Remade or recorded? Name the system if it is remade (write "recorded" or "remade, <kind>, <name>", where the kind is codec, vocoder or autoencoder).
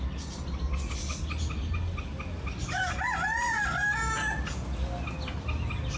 recorded